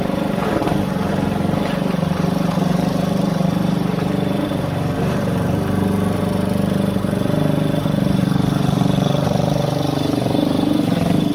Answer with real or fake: fake